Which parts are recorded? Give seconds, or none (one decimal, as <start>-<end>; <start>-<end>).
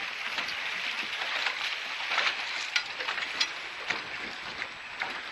0.0-1.4; 4.6-5.3